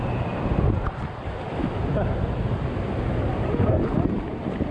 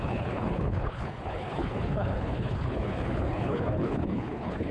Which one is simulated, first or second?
second